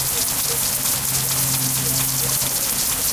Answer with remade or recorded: recorded